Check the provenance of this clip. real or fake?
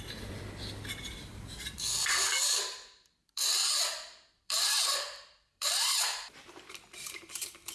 fake